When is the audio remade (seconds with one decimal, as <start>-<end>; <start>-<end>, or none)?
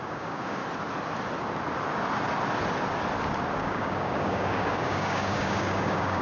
0.0-0.6; 3.6-6.2